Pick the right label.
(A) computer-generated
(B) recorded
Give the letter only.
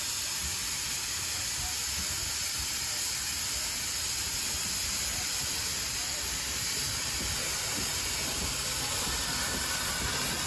B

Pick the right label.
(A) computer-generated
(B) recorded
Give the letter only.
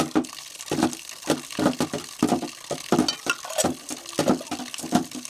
B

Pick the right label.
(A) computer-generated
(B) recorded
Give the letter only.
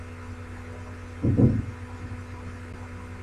B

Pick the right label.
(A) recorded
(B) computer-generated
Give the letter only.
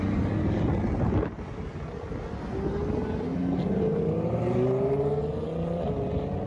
A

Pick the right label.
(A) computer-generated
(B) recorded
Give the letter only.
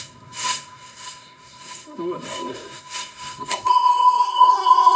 A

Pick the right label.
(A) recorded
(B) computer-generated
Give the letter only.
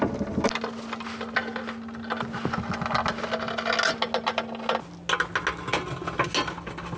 A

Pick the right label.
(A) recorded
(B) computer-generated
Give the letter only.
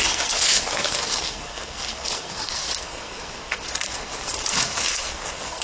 B